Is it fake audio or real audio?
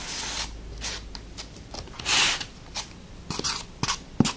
real